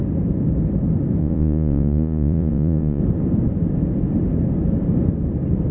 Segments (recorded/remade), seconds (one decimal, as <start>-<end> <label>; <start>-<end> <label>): 0.0-1.2 recorded; 1.2-3.0 remade; 3.0-5.7 recorded